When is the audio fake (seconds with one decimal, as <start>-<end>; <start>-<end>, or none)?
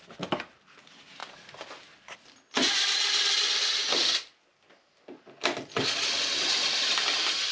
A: none